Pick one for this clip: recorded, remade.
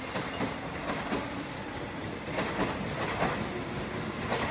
recorded